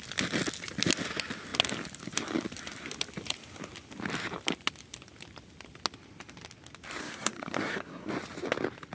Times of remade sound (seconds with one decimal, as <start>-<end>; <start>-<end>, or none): 7.0-8.1